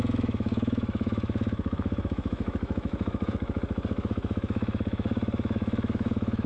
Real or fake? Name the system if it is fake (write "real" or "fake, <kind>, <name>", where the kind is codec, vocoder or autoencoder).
fake, autoencoder, DAC-VAE